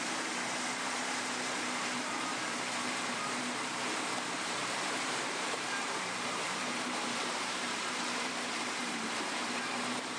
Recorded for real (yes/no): no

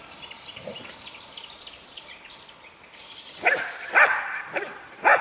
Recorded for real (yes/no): no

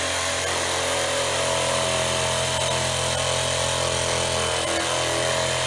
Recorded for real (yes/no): yes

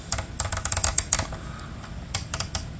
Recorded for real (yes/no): yes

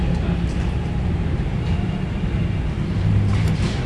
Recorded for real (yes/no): no